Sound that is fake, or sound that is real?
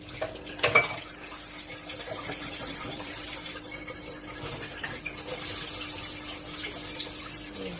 real